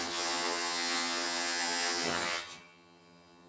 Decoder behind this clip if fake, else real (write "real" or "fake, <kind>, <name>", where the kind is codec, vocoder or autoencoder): fake, vocoder, HiFi-GAN